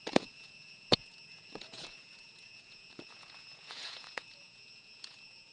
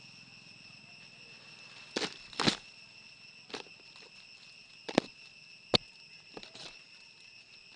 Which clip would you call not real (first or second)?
first